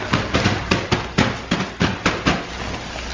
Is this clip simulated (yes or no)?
no